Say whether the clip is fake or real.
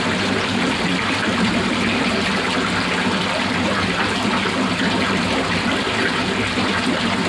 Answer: fake